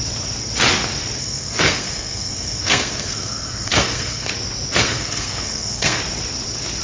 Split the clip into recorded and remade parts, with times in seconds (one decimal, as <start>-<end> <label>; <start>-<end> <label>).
0.0-1.2 recorded; 1.2-4.3 remade; 4.3-4.8 recorded; 4.8-6.0 remade; 6.0-6.8 recorded